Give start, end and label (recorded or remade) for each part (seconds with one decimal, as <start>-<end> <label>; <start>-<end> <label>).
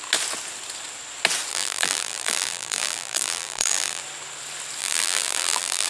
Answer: 0.0-1.5 recorded; 1.5-4.0 remade; 4.0-4.8 recorded; 4.8-5.9 remade